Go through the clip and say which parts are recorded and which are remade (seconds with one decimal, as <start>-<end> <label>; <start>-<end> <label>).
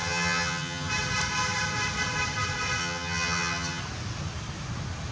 0.0-0.9 remade; 0.9-2.8 recorded; 2.8-3.8 remade; 3.8-5.1 recorded